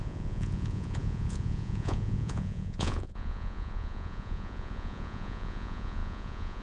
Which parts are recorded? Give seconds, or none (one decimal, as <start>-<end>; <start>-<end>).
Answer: none